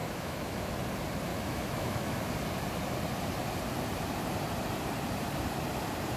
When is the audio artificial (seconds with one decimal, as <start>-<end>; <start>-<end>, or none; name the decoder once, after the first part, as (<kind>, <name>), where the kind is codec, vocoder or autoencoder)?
0.0-0.7 (autoencoder, DAC-VAE); 1.3-2.3